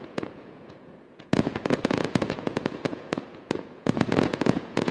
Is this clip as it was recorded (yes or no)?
no